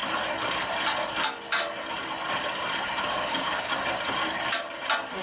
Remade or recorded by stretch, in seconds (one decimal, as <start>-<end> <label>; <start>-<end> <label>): 0.0-3.1 recorded; 3.1-3.7 remade; 3.7-5.2 recorded